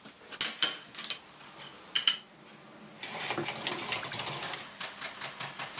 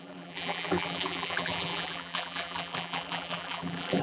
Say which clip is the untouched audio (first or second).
first